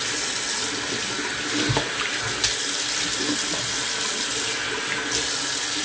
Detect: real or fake real